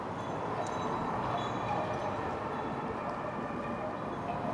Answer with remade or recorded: recorded